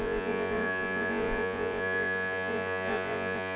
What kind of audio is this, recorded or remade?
remade